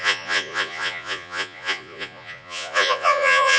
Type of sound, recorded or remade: remade